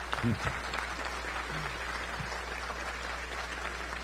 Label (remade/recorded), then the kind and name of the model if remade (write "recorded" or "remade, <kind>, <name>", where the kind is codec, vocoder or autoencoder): recorded